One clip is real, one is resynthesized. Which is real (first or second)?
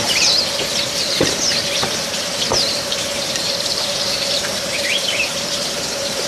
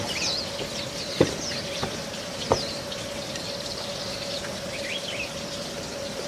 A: second